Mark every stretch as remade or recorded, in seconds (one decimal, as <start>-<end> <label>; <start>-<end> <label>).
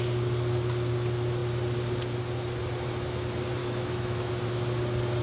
0.0-3.6 recorded; 3.6-4.3 remade; 4.3-5.2 recorded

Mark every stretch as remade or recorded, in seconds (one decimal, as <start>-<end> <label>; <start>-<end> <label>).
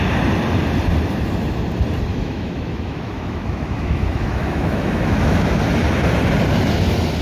0.0-2.1 recorded; 2.1-5.6 remade; 5.6-7.2 recorded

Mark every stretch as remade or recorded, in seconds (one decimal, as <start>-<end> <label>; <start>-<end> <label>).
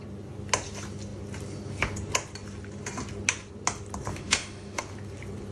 0.0-4.1 recorded; 4.1-4.8 remade; 4.8-5.5 recorded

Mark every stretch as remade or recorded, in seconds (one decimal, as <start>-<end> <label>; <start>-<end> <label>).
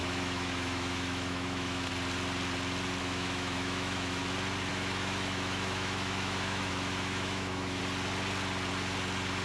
0.0-1.9 remade; 1.9-3.0 recorded; 3.0-4.2 remade; 4.2-4.7 recorded; 4.7-7.8 remade; 7.8-9.4 recorded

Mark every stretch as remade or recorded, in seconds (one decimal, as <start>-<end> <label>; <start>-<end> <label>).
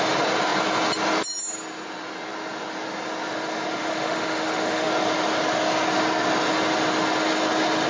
0.0-3.8 recorded; 3.8-4.9 remade; 4.9-7.9 recorded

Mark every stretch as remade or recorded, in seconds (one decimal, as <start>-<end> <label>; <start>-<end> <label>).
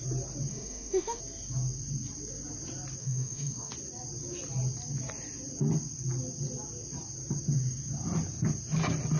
0.0-0.5 recorded; 0.5-1.2 remade; 1.2-3.0 recorded; 3.0-3.7 remade; 3.7-9.2 recorded